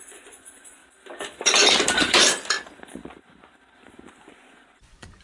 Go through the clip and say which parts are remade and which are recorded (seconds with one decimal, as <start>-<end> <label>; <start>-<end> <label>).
0.0-0.8 remade; 0.8-3.9 recorded; 3.9-5.2 remade